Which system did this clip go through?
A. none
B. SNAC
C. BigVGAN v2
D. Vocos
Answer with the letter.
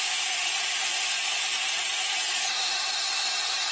C